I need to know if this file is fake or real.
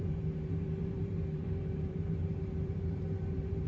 fake